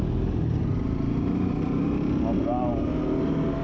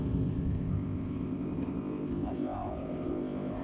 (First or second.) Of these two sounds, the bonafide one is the first